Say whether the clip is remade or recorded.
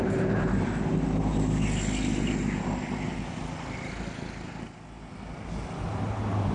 recorded